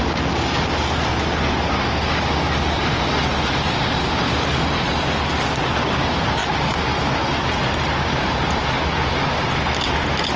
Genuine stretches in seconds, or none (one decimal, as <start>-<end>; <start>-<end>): 0.0-10.4